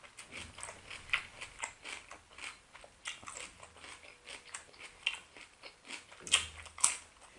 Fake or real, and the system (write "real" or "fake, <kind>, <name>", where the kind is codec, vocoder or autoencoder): real